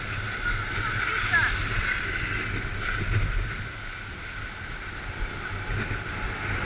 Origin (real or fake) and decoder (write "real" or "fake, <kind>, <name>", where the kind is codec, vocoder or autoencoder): real